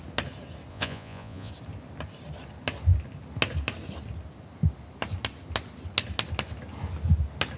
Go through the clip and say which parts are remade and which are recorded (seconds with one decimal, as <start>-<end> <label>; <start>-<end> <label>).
0.0-0.7 recorded; 0.7-1.5 remade; 1.5-7.6 recorded